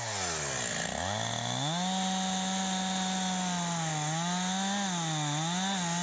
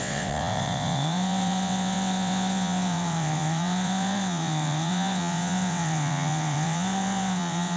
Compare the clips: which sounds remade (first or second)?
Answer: second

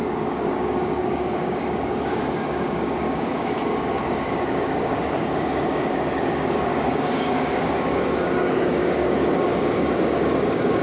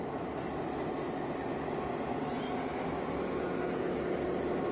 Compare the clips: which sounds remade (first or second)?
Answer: first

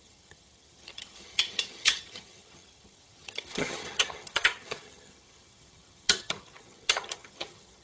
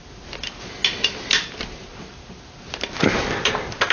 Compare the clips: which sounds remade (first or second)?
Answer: first